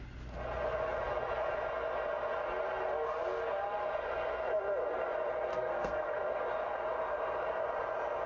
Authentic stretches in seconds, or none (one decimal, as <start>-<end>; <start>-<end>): 0.0-5.5; 6.2-8.3

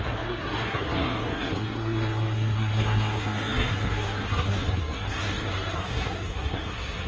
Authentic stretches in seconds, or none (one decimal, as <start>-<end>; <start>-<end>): none

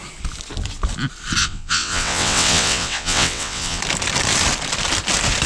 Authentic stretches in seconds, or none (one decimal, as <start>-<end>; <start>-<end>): 0.0-1.4; 3.8-5.5

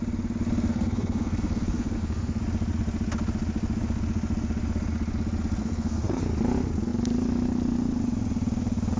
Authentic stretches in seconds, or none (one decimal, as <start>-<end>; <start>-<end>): 0.0-0.7; 2.4-5.6; 6.2-9.0

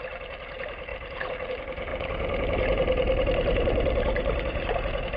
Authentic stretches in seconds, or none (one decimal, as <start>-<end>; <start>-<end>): 0.0-0.9; 1.5-1.9